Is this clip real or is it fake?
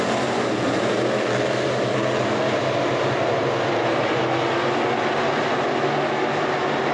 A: real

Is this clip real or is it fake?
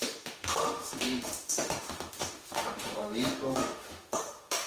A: fake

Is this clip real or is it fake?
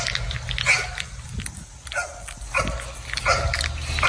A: real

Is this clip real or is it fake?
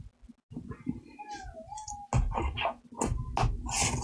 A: real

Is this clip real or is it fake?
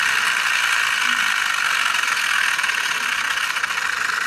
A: real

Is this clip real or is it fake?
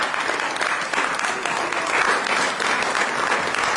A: real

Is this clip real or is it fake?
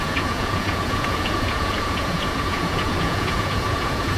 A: fake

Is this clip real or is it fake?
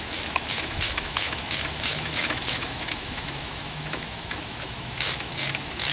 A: fake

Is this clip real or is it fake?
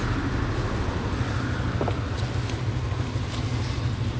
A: real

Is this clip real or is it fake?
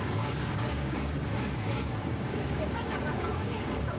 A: fake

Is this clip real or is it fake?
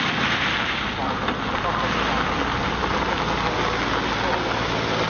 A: real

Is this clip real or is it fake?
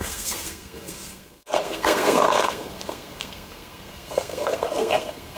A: fake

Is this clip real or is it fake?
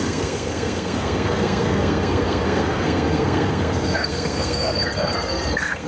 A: fake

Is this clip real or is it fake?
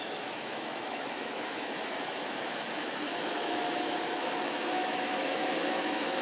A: fake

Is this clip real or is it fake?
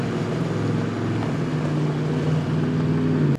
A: real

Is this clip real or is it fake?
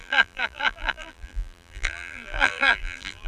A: fake